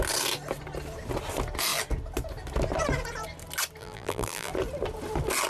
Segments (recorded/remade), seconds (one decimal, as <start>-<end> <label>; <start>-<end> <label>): 0.0-3.8 recorded; 3.8-4.5 remade; 4.5-5.5 recorded